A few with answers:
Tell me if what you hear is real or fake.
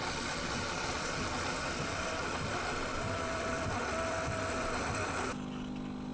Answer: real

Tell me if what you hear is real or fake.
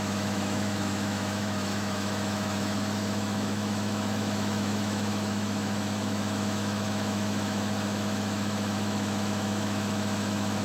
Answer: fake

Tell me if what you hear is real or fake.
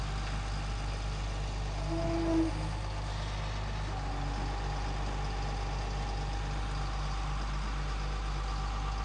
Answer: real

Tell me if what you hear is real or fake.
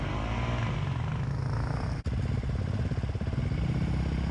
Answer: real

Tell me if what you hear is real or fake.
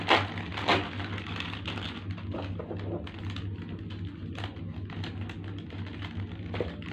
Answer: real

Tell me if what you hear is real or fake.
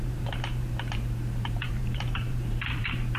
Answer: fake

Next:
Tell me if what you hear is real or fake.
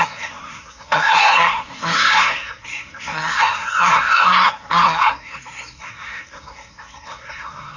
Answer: fake